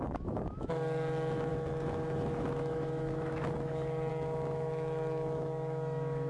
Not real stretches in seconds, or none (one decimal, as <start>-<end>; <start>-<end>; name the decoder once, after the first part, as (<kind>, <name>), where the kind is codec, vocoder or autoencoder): 0.0-6.3 (autoencoder, DAC-VAE)